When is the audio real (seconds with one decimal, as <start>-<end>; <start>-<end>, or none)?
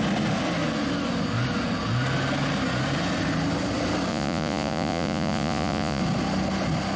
0.0-4.1; 6.0-7.0